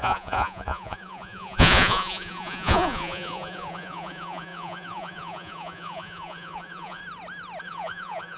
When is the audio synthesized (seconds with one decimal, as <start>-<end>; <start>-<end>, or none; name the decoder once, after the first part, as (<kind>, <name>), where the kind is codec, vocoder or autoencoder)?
0.0-7.0 (vocoder, Vocos); 7.6-8.4